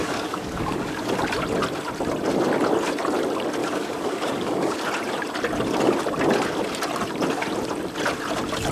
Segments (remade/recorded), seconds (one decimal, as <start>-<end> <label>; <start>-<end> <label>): 0.0-1.1 remade; 1.1-3.6 recorded; 3.6-4.8 remade; 4.8-8.7 recorded